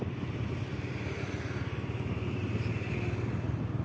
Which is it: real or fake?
real